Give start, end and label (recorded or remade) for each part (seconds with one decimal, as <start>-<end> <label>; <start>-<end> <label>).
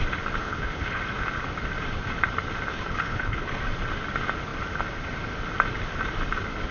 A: 0.0-0.4 recorded; 0.4-1.0 remade; 1.0-2.7 recorded; 2.7-3.6 remade; 3.6-6.7 recorded